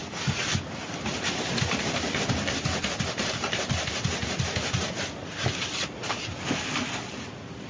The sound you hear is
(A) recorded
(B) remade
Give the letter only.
A